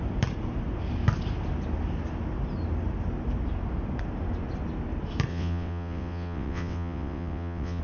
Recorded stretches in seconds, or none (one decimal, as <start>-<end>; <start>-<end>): 0.0-5.3